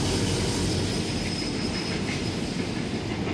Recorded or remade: recorded